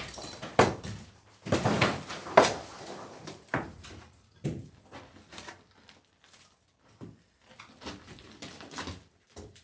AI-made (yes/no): yes